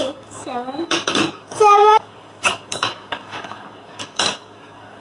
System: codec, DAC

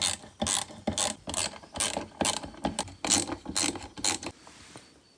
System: none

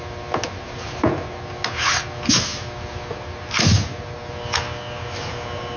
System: none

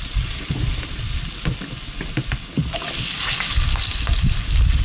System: none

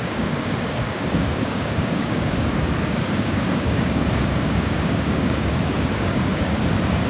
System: codec, DAC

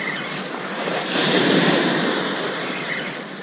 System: none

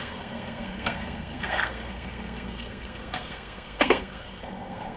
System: codec, SNAC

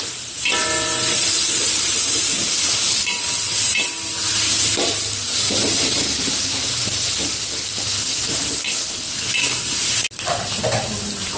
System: none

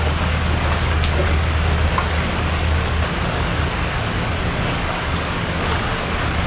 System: codec, DAC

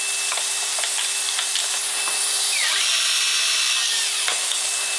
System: none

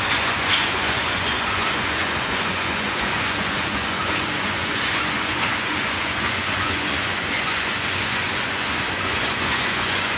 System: vocoder, Vocos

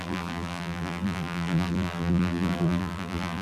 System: vocoder, BigVGAN v2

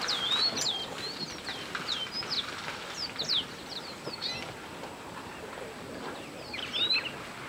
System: none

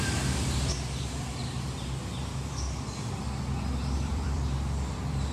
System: vocoder, BigVGAN v2